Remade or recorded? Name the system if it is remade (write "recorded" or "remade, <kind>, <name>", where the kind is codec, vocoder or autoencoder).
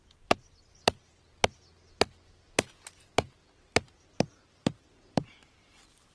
recorded